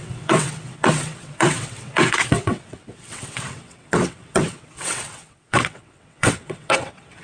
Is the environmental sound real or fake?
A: fake